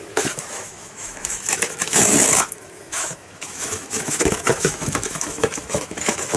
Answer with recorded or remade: remade